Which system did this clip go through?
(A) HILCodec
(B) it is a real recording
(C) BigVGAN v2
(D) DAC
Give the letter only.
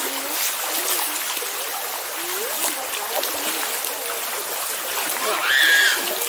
B